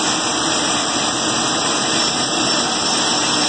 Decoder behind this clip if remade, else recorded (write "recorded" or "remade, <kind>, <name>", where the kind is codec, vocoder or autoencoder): remade, vocoder, BigVGAN v2